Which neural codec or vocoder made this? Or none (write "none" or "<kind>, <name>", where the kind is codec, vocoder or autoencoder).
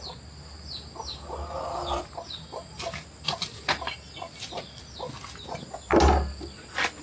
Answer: none